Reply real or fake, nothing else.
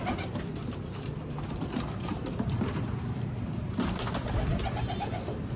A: fake